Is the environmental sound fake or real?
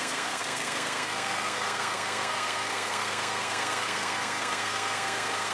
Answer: fake